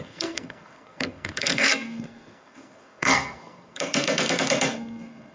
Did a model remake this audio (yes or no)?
yes